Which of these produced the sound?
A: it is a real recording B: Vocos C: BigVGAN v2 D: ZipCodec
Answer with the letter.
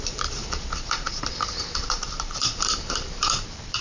C